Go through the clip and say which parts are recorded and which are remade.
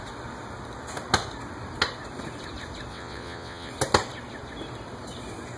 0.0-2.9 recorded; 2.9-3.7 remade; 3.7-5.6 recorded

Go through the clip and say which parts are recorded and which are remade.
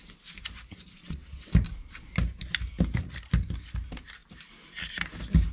0.0-1.0 recorded; 1.0-1.5 remade; 1.5-5.5 recorded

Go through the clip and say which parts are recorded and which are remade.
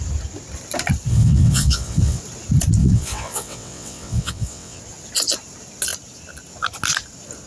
0.0-1.1 recorded; 1.1-2.2 remade; 2.2-2.8 recorded; 2.8-4.8 remade; 4.8-7.5 recorded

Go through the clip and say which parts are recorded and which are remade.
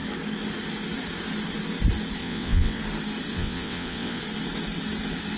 0.0-2.2 recorded; 2.2-2.8 remade; 2.8-3.3 recorded; 3.3-4.2 remade; 4.2-5.4 recorded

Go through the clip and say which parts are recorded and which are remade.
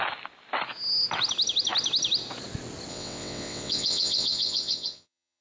0.0-2.9 recorded; 2.9-5.4 remade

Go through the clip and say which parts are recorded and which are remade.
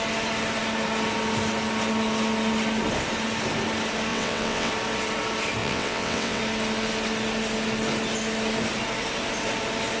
0.0-4.1 recorded; 4.1-4.7 remade; 4.7-5.6 recorded; 5.6-6.4 remade; 6.4-10.0 recorded